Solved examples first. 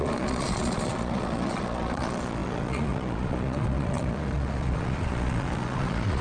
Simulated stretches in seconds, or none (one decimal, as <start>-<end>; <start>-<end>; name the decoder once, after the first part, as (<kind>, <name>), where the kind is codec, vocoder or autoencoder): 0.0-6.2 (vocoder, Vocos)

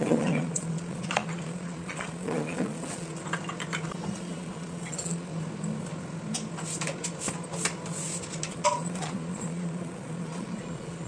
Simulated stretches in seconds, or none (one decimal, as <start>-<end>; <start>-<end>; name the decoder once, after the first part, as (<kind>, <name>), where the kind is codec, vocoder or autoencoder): 0.0-3.1 (vocoder, Vocos); 4.1-5.3; 8.5-11.1

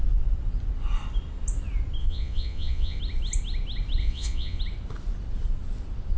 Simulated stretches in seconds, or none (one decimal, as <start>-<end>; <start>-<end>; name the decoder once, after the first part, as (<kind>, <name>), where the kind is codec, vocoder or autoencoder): 2.0-3.0 (vocoder, Vocos); 4.0-4.6

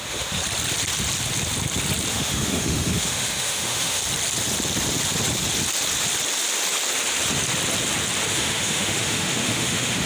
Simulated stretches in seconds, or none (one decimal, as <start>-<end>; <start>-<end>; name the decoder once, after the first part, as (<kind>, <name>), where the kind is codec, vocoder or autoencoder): 0.0-0.4 (autoencoder, DAC-VAE); 2.1-4.0; 8.3-10.1

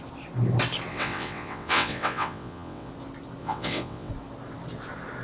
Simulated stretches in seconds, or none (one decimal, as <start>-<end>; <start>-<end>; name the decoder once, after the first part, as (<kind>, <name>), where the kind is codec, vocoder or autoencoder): 0.9-2.9 (vocoder, WaveNeXt); 3.4-4.1

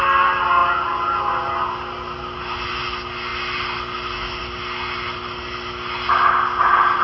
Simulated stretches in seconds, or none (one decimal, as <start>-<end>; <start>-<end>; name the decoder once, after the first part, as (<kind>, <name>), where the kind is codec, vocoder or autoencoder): none

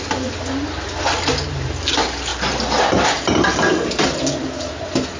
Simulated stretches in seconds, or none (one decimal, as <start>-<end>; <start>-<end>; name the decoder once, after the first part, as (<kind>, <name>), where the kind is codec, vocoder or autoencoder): 2.3-3.6 (vocoder, BigVGAN v2)

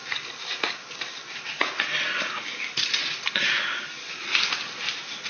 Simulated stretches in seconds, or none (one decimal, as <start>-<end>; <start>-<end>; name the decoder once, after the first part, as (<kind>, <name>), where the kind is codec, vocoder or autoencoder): none